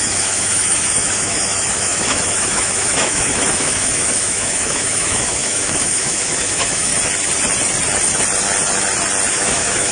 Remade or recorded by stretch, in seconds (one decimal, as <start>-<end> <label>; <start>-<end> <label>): 0.0-6.9 remade; 6.9-9.3 recorded; 9.3-9.9 remade